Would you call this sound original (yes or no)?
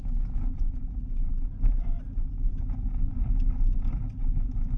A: no